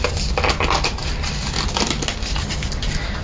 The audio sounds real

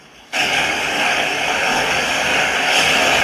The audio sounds fake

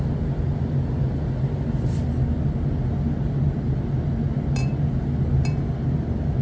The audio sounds real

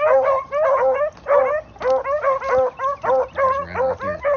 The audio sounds real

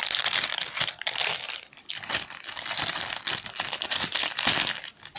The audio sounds fake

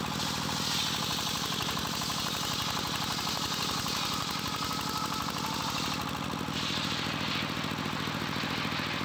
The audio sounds real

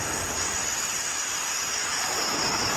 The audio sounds real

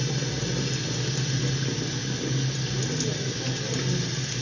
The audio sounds real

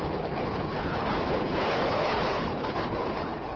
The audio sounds fake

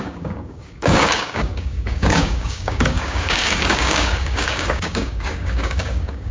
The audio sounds fake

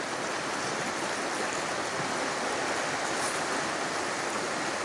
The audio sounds real